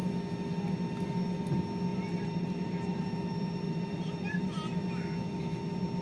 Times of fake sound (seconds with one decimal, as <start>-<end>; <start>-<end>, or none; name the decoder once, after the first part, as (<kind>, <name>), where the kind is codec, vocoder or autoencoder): 1.9-4.8 (vocoder, BigVGAN v2)